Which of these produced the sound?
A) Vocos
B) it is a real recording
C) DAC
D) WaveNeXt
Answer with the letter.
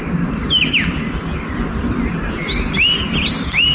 B